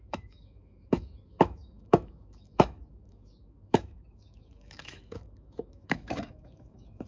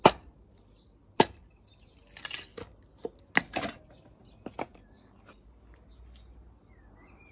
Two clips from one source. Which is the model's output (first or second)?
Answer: first